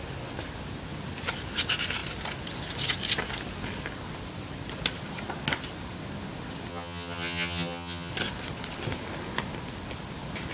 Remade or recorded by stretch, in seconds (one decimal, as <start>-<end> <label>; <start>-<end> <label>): 0.0-6.7 recorded; 6.7-8.1 remade; 8.1-10.5 recorded